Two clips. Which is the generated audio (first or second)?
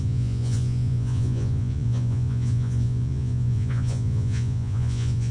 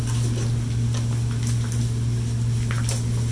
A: first